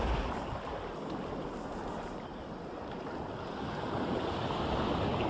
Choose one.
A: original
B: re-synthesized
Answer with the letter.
A